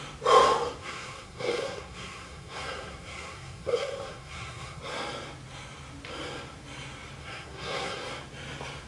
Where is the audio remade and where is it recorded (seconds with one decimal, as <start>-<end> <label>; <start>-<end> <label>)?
0.0-0.8 recorded; 0.8-4.8 remade; 4.8-7.2 recorded; 7.2-8.0 remade; 8.0-8.9 recorded